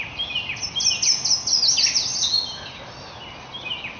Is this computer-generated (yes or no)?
no